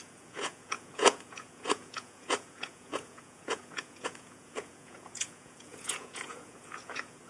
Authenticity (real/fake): fake